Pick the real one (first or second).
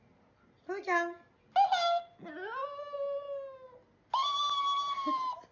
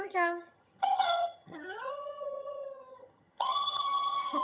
first